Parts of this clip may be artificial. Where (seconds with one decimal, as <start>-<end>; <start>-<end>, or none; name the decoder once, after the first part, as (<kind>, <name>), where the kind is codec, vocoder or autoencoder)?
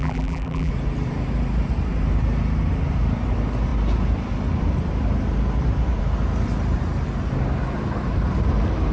0.0-0.7 (vocoder, BigVGAN v2)